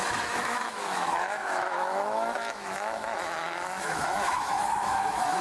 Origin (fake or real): fake